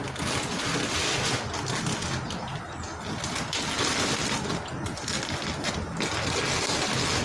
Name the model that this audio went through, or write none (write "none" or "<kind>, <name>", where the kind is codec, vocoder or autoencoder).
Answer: none